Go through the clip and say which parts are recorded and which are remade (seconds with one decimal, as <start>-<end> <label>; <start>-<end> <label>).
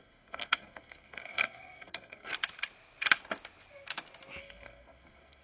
0.0-2.3 remade; 2.3-4.4 recorded; 4.4-5.4 remade